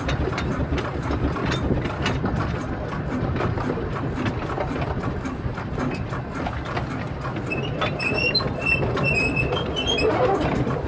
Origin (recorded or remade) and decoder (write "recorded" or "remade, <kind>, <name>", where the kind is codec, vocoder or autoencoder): recorded